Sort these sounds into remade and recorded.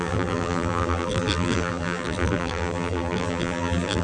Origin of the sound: remade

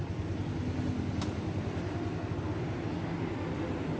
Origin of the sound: recorded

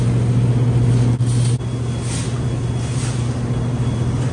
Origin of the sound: recorded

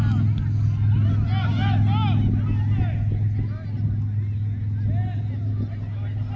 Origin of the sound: recorded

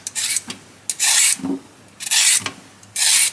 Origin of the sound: recorded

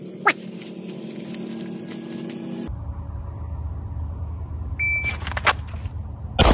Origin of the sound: recorded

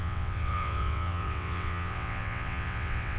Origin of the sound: remade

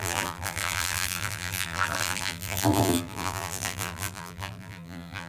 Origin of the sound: remade